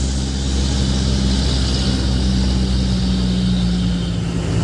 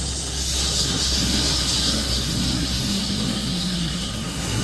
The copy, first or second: second